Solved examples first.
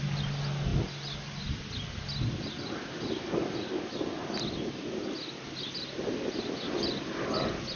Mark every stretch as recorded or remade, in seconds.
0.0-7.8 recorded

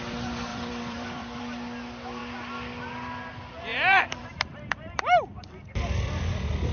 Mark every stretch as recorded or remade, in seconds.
0.0-0.5 recorded; 0.5-1.4 remade; 1.4-3.7 recorded; 3.7-6.3 remade; 6.3-6.7 recorded

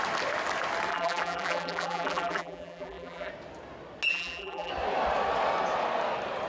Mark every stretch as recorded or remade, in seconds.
0.0-0.9 recorded; 0.9-3.3 remade; 3.3-4.1 recorded; 4.1-4.7 remade; 4.7-6.5 recorded

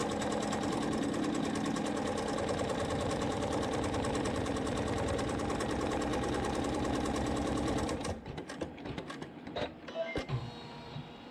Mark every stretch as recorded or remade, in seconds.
0.0-0.7 recorded; 0.7-6.1 remade; 6.1-6.6 recorded; 6.6-11.3 remade

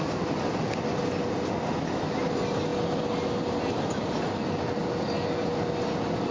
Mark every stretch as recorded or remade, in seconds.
0.0-6.3 recorded

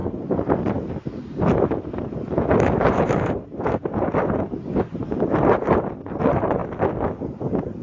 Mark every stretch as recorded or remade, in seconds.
0.0-6.6 remade; 6.6-7.2 recorded; 7.2-7.8 remade

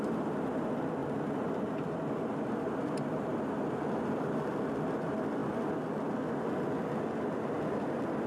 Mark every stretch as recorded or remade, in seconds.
0.0-5.4 remade; 5.4-7.6 recorded; 7.6-8.3 remade

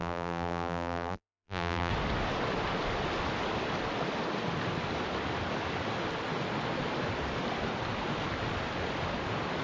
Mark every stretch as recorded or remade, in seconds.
0.0-1.9 remade; 1.9-9.6 recorded